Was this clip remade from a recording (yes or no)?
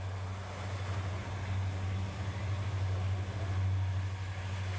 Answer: no